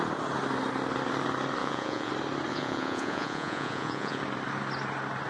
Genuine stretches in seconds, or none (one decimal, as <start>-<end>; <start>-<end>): 0.0-1.6; 2.1-2.5; 4.2-5.3